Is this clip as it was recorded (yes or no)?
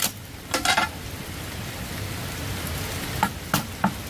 yes